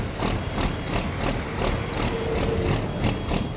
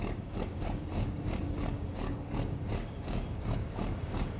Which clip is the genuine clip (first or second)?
first